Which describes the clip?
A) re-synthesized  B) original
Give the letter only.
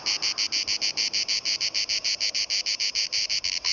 B